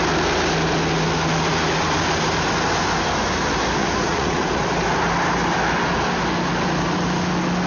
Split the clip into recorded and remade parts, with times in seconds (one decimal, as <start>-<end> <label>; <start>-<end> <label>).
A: 0.0-3.8 recorded; 3.8-4.6 remade; 4.6-7.7 recorded